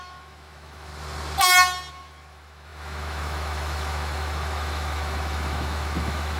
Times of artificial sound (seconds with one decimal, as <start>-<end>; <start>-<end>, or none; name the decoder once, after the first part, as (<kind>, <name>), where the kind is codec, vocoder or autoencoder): 0.0-0.9 (autoencoder, DAC-VAE); 1.9-6.4